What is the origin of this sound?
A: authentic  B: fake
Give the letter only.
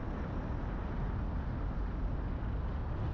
A